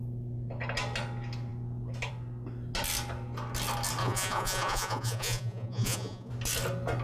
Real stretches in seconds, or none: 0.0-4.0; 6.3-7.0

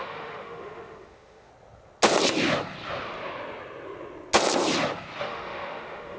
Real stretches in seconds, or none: 1.5-5.2